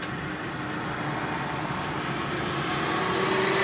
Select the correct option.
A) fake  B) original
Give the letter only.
B